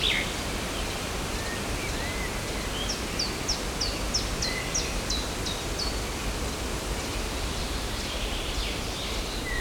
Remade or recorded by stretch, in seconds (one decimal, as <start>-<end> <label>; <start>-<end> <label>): 0.0-7.1 recorded; 7.1-7.7 remade; 7.7-9.6 recorded